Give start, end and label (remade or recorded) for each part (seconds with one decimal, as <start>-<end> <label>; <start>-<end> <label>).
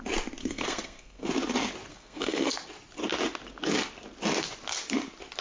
0.0-0.4 recorded; 0.4-1.3 remade; 1.3-1.9 recorded; 1.9-2.5 remade; 2.5-5.4 recorded